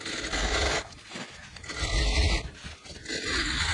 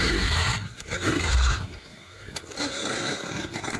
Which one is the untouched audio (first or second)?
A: first